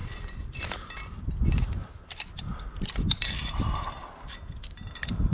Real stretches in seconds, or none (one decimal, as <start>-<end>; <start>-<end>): 0.0-5.3